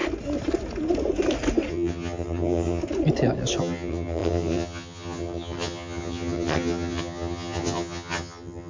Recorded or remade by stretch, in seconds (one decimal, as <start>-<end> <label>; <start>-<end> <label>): 0.0-1.7 recorded; 1.7-2.8 remade; 2.8-3.6 recorded; 3.6-8.7 remade

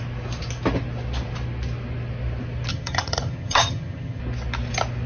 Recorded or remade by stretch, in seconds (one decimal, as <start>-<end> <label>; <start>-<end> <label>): 0.0-2.7 recorded; 2.7-4.2 remade; 4.2-5.1 recorded